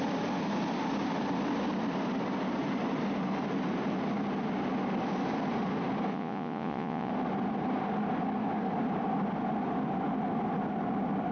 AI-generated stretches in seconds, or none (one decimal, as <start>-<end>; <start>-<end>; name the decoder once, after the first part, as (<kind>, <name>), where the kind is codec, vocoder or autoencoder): 6.1-7.1 (vocoder, Vocos)